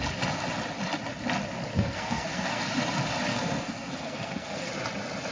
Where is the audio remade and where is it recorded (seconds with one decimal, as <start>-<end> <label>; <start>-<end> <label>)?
0.0-1.7 recorded; 1.7-2.6 remade; 2.6-3.3 recorded; 3.3-4.7 remade; 4.7-5.3 recorded